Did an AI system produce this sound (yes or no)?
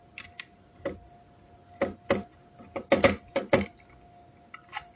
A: no